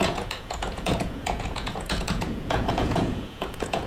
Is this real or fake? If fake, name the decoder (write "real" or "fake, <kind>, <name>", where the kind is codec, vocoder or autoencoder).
fake, vocoder, Vocos